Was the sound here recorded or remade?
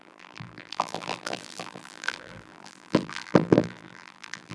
remade